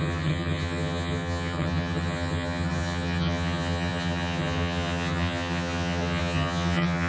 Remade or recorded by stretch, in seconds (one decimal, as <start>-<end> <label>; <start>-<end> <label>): 0.0-7.1 remade